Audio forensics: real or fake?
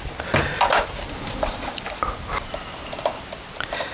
real